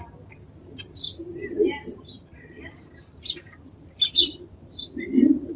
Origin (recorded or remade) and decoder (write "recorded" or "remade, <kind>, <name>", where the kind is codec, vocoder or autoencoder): recorded